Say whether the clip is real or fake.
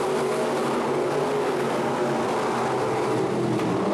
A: real